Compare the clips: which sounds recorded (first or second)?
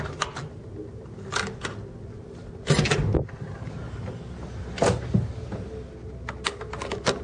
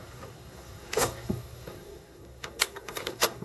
first